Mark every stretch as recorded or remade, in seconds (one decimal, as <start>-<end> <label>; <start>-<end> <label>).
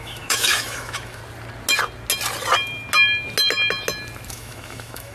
0.0-1.2 remade; 1.2-4.3 recorded; 4.3-5.1 remade